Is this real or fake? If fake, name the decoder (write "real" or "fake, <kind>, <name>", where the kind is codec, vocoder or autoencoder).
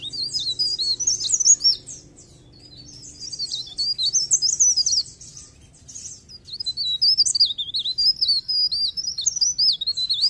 real